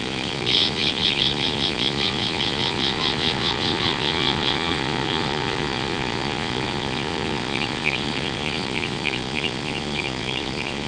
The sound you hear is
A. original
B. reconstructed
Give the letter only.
B